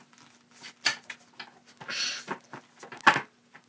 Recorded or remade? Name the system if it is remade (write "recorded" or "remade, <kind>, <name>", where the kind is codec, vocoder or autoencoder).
recorded